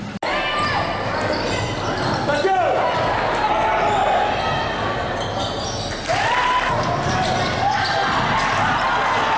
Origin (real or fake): real